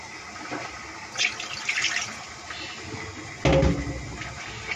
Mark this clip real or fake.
real